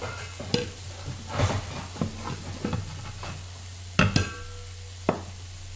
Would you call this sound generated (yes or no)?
no